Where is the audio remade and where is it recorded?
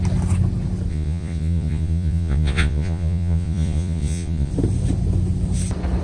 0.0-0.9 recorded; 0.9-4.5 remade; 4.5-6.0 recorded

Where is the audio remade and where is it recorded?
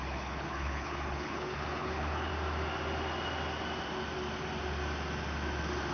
0.0-2.3 remade; 2.3-5.9 recorded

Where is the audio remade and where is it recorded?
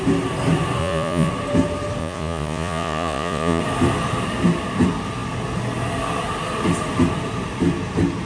0.0-0.8 recorded; 0.8-1.3 remade; 1.3-2.0 recorded; 2.0-3.6 remade; 3.6-8.3 recorded